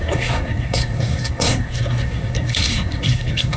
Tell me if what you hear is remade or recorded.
remade